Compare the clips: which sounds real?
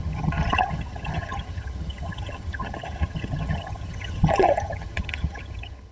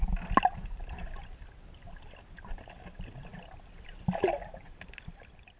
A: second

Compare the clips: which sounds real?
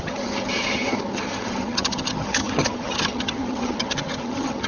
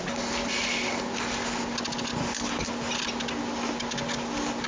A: second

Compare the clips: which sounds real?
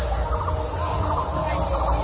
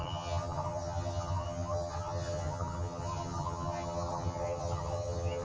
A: first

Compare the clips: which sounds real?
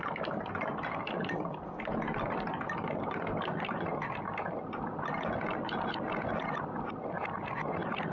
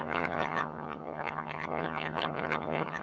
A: first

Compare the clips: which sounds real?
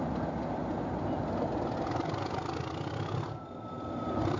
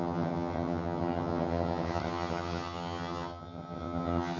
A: first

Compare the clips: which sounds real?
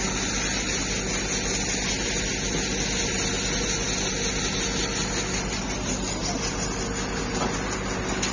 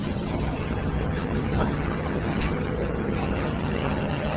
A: first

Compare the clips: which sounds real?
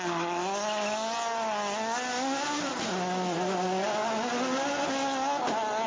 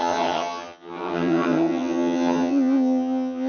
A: first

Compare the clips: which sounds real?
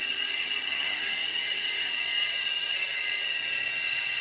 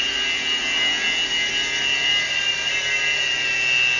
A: second